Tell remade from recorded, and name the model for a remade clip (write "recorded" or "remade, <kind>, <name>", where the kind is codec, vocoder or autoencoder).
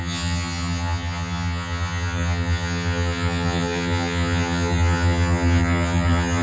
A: remade, vocoder, HiFi-GAN